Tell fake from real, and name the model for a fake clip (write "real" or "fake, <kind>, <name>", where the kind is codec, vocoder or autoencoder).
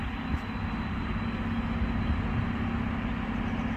real